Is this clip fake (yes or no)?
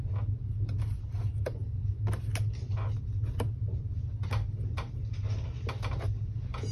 no